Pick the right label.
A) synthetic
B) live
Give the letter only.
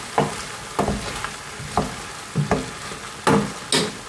B